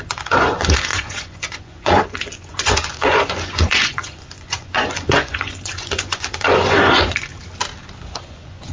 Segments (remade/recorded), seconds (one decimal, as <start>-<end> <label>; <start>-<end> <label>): 0.0-7.3 remade; 7.3-8.0 recorded; 8.0-8.7 remade